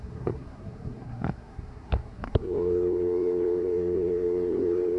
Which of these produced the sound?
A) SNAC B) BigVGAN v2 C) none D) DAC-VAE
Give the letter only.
A